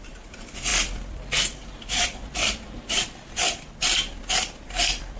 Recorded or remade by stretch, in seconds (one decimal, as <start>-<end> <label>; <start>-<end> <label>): 0.0-5.2 remade